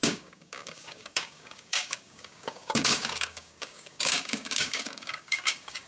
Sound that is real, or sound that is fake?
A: fake